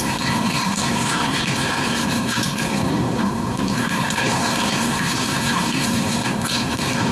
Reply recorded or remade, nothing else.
remade